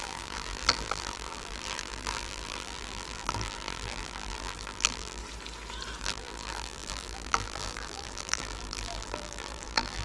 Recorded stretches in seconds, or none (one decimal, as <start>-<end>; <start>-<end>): 5.2-6.0